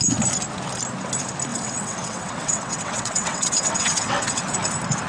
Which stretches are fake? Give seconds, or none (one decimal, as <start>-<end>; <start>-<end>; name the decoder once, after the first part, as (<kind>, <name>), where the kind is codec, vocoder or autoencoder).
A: 1.5-4.4 (vocoder, WaveNeXt)